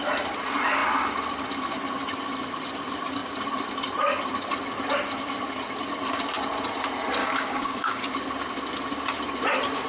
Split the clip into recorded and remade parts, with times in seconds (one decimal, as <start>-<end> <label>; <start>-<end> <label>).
0.0-7.2 recorded; 7.2-8.1 remade; 8.1-9.9 recorded